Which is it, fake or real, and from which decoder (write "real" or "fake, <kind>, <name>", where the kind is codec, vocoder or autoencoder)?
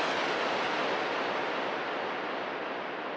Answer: real